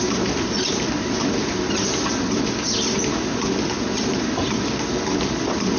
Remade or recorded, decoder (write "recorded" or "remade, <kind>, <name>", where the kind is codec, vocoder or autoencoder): recorded